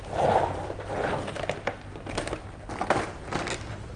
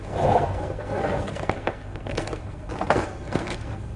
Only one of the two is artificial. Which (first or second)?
second